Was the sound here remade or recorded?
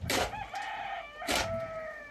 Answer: recorded